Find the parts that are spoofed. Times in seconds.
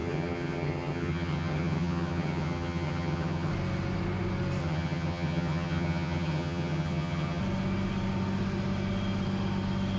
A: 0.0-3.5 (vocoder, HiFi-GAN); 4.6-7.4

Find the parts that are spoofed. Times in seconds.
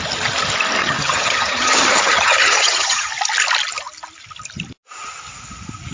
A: 0.8-3.1 (vocoder, HiFi-GAN)